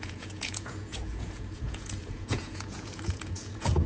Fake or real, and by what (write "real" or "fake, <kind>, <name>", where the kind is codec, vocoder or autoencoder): fake, vocoder, Vocos